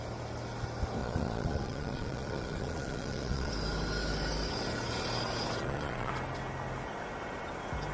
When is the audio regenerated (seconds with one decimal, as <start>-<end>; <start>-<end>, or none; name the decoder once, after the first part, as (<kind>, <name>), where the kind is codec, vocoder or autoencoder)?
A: 1.0-3.5 (vocoder, Vocos); 5.6-6.1